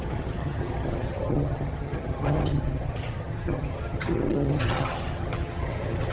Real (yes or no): no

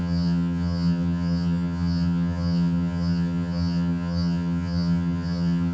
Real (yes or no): no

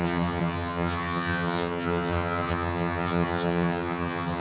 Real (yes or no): no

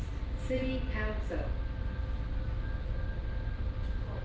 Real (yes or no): yes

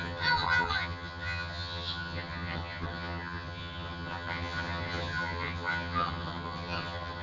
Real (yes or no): no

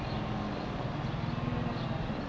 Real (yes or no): yes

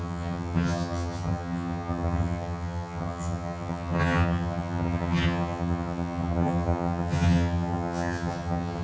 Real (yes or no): no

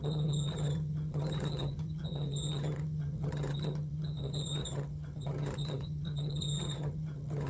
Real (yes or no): no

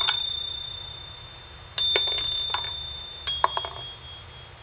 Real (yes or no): yes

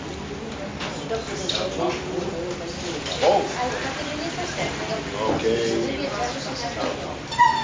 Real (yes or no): yes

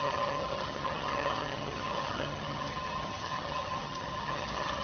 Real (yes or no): no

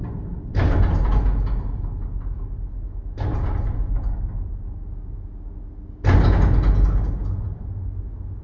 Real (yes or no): yes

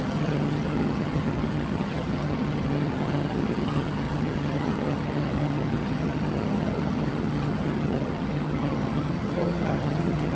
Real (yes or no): no